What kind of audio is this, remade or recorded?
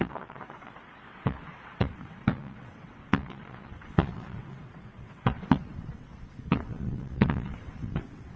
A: remade